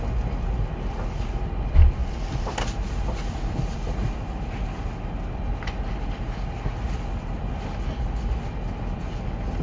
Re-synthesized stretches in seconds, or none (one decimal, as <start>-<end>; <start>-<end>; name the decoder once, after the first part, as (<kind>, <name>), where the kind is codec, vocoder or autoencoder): none